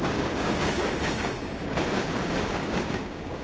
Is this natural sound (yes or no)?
no